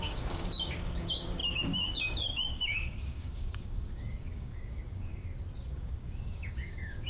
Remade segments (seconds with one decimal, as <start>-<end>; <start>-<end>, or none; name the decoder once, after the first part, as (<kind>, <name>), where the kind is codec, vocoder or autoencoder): 0.0-5.2 (codec, DAC); 5.7-7.1